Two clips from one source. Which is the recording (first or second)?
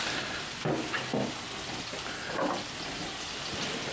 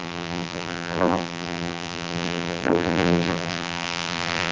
first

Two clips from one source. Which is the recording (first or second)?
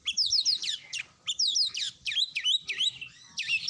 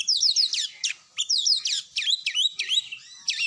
first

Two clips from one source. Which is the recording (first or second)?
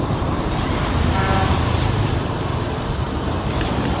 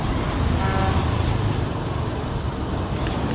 second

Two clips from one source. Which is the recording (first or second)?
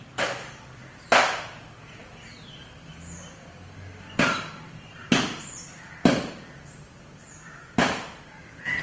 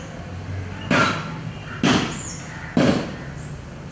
second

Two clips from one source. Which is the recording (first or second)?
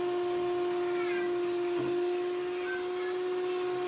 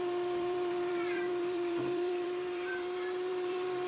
first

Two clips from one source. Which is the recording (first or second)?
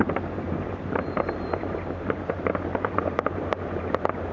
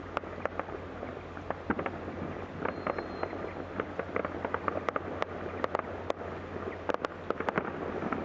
second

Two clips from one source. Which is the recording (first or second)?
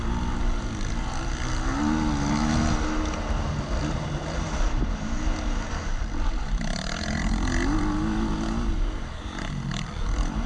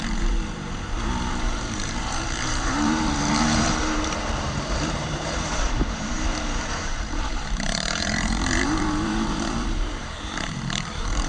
first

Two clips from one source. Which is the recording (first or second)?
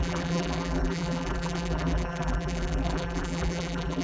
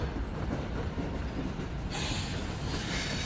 second